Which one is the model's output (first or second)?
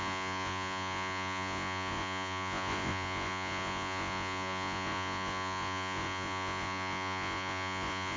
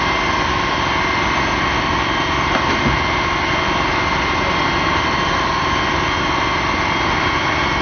first